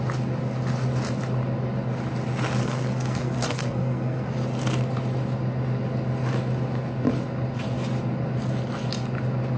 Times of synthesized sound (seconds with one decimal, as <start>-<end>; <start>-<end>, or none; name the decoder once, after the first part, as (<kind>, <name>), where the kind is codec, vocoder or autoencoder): 2.6-4.3 (codec, SNAC)

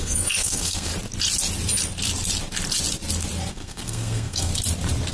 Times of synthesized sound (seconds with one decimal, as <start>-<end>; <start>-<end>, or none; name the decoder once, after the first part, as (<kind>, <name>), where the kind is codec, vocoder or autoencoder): 0.0-0.9 (codec, SNAC); 3.5-4.5

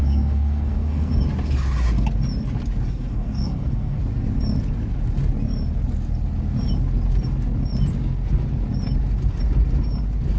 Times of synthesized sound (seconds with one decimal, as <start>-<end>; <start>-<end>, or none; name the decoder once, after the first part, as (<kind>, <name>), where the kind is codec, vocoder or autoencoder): 0.0-1.1 (codec, SNAC); 3.1-4.0

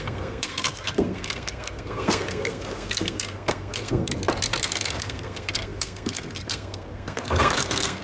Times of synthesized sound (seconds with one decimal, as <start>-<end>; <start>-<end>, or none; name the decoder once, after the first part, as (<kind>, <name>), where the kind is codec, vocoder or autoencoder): 0.0-4.1 (codec, SNAC); 4.6-8.0

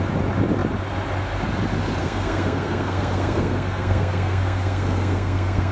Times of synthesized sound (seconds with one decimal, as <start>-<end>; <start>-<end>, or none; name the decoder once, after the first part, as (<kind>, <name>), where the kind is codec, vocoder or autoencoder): 2.0-5.7 (codec, SNAC)